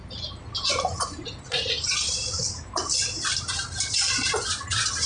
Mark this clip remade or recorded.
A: recorded